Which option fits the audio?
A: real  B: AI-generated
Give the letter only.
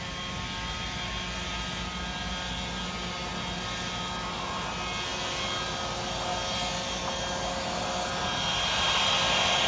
A